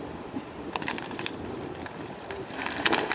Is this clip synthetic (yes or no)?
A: no